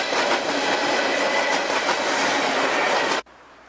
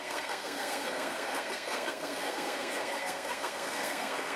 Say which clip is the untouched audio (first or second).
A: first